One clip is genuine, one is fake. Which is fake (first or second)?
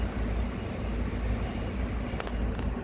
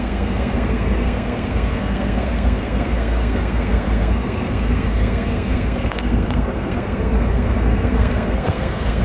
second